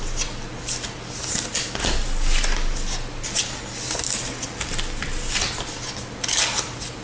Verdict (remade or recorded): recorded